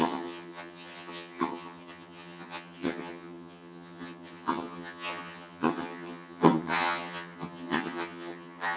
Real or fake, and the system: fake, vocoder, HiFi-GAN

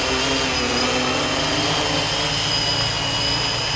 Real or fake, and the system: real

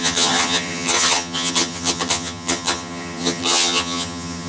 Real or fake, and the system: fake, vocoder, HiFi-GAN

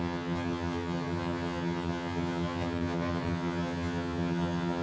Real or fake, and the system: fake, vocoder, HiFi-GAN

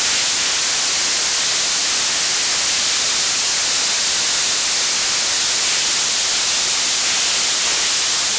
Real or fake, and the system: real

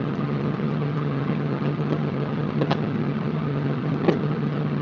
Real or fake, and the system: fake, vocoder, HiFi-GAN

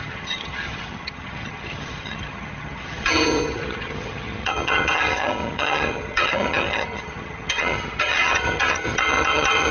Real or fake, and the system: fake, vocoder, HiFi-GAN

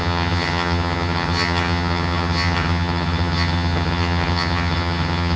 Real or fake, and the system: fake, vocoder, HiFi-GAN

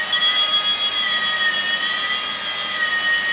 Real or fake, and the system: real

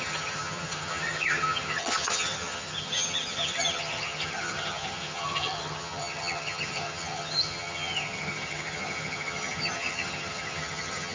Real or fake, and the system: fake, vocoder, HiFi-GAN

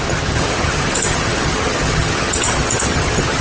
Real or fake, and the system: fake, vocoder, HiFi-GAN